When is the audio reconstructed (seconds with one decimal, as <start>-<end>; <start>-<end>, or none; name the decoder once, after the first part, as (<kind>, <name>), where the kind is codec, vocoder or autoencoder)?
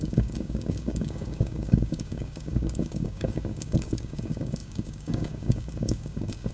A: 0.0-6.5 (codec, DAC)